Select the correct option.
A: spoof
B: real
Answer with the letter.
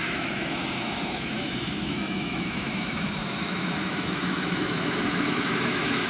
A